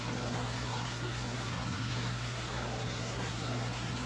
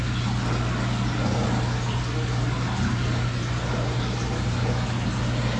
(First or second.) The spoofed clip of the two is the first